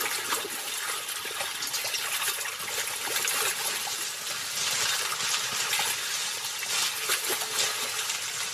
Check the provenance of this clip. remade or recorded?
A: recorded